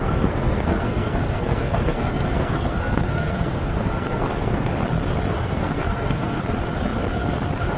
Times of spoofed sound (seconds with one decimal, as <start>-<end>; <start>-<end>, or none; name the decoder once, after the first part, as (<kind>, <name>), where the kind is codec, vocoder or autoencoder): 0.0-4.7 (codec, SNAC); 5.3-6.4